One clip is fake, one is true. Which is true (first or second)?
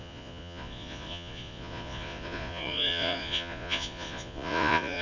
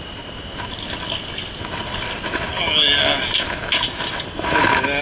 second